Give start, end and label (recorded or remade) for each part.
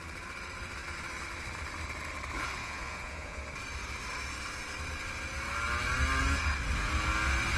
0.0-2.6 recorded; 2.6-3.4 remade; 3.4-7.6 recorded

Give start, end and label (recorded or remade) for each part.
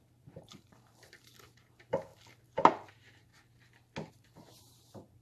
0.0-2.1 remade; 2.1-2.9 recorded; 2.9-3.3 remade; 3.3-4.1 recorded; 4.1-5.2 remade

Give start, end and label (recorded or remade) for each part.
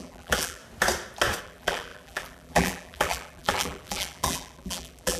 0.0-0.6 remade; 0.6-1.4 recorded; 1.4-5.2 remade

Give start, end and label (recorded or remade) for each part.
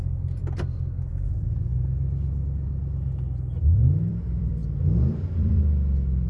0.0-0.4 remade; 0.4-1.1 recorded; 1.1-1.7 remade; 1.7-4.1 recorded; 4.1-4.6 remade; 4.6-5.1 recorded; 5.1-6.3 remade